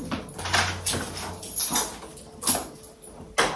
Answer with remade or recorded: recorded